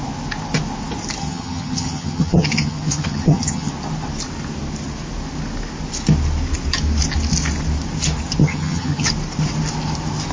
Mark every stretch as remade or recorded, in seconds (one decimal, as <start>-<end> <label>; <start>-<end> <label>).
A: 0.0-1.2 recorded; 1.2-3.7 remade; 3.7-8.4 recorded; 8.4-9.1 remade; 9.1-10.3 recorded